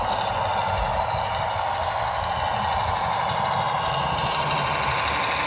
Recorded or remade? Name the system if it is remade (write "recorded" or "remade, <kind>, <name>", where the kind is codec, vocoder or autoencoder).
recorded